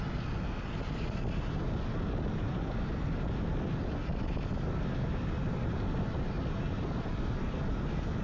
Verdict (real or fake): real